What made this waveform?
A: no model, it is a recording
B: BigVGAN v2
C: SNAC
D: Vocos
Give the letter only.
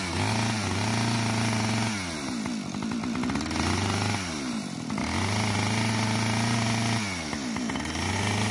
A